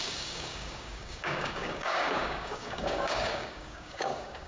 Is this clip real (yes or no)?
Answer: no